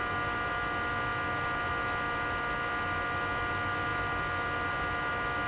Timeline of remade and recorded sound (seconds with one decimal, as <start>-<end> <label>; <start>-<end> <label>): 0.0-5.5 recorded